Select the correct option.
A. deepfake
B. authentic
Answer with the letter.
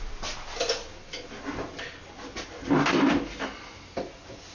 B